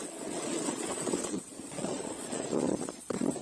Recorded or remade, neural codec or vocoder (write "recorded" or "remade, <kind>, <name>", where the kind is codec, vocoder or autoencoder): remade, vocoder, Vocos